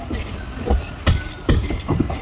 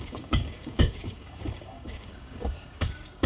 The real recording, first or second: first